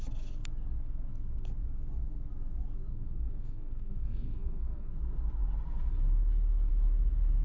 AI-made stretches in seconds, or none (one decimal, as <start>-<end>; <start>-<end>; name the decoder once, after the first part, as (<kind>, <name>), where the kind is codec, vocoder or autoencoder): 2.9-4.9 (codec, SNAC)